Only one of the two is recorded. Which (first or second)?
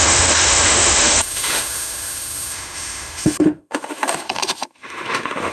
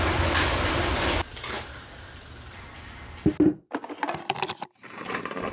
second